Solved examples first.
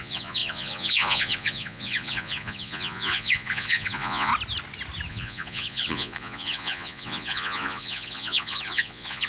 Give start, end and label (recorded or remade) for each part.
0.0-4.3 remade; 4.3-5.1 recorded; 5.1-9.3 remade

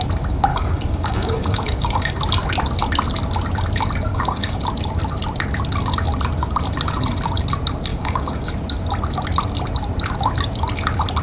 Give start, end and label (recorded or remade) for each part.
0.0-0.5 recorded; 0.5-2.2 remade; 2.2-4.1 recorded; 4.1-4.6 remade; 4.6-7.9 recorded; 7.9-8.5 remade; 8.5-11.2 recorded

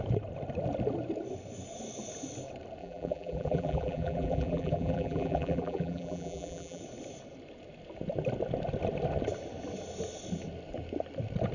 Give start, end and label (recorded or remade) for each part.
0.0-2.8 recorded; 2.8-6.8 remade; 6.8-11.5 recorded